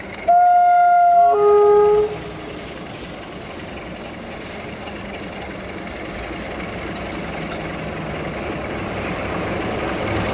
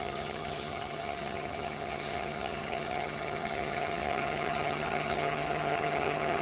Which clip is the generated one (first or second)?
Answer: second